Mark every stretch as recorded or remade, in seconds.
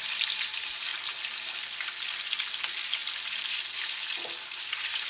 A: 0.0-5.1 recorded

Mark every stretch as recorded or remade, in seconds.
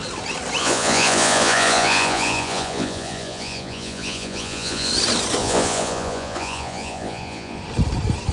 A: 0.0-0.6 recorded; 0.6-4.9 remade; 4.9-5.4 recorded; 5.4-7.6 remade; 7.6-8.3 recorded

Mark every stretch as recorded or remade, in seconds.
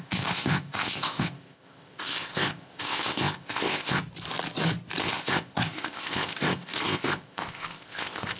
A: 0.0-4.0 remade; 4.0-5.0 recorded; 5.0-8.4 remade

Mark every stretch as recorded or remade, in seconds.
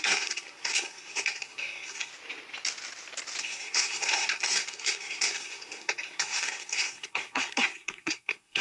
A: 0.0-2.1 remade; 2.1-3.4 recorded; 3.4-8.6 remade